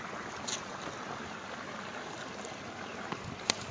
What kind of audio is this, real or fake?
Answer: real